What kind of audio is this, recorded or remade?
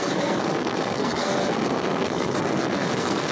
remade